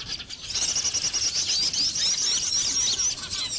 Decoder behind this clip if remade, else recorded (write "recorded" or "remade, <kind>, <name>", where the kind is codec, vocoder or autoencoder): recorded